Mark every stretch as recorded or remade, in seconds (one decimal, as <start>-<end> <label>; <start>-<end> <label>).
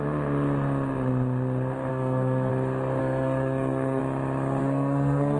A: 0.0-1.9 recorded; 1.9-2.5 remade; 2.5-3.0 recorded; 3.0-4.0 remade; 4.0-4.6 recorded; 4.6-5.4 remade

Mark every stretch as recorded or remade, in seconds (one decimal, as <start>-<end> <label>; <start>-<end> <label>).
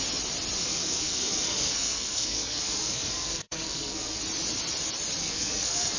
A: 0.0-0.6 recorded; 0.6-4.2 remade; 4.2-5.2 recorded; 5.2-6.0 remade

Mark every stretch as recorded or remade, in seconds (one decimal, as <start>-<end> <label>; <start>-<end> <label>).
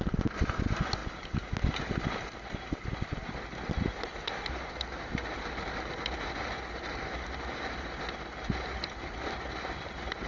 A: 0.0-10.3 recorded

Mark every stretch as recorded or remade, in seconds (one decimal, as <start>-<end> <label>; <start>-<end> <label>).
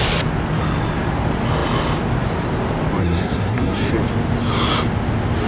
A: 0.0-3.0 recorded; 3.0-3.9 remade; 3.9-5.5 recorded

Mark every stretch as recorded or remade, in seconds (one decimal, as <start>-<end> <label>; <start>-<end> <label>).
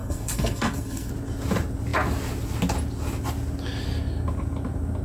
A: 0.0-1.1 remade; 1.1-5.0 recorded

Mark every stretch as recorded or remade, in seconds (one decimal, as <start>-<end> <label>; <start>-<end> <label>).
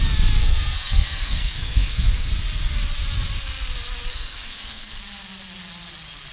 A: 0.0-0.4 recorded; 0.4-2.3 remade; 2.3-4.1 recorded; 4.1-5.0 remade; 5.0-6.3 recorded